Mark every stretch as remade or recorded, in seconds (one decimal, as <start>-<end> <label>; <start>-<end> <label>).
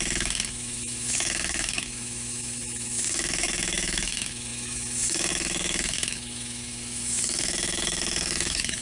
0.0-8.8 remade